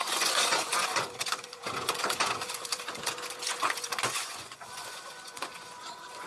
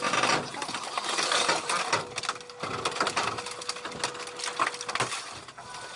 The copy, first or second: first